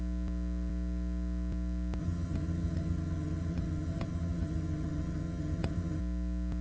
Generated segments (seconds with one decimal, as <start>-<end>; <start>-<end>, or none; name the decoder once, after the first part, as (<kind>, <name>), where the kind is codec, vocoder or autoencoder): 2.0-6.0 (vocoder, HiFi-GAN)